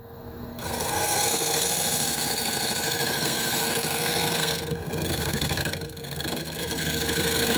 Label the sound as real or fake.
fake